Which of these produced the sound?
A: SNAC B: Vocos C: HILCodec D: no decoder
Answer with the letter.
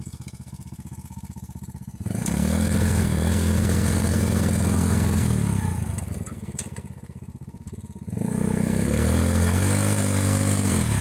A